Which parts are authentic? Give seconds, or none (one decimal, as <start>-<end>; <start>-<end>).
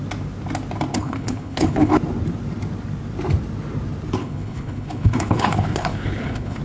0.0-0.9; 1.9-4.2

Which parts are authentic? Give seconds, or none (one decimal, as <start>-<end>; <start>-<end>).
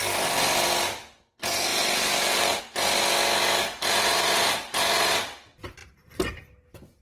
0.0-1.7; 2.6-5.8; 6.3-7.0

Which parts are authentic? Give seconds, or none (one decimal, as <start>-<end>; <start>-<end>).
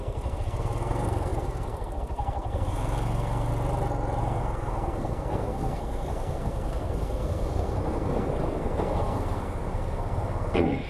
3.5-4.2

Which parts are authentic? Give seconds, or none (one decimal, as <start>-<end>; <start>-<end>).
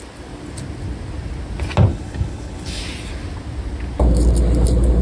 0.0-1.9; 2.8-5.0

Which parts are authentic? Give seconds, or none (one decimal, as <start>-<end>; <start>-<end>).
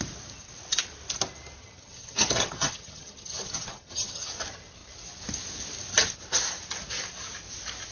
0.0-1.6; 4.3-7.9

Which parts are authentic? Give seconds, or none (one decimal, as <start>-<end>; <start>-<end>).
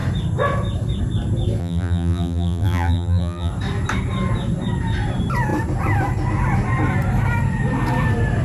0.0-1.6; 3.5-8.4